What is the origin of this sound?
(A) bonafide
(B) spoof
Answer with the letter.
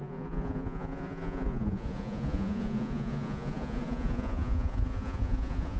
B